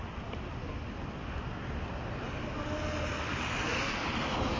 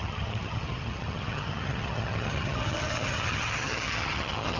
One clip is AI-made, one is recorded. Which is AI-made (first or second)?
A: second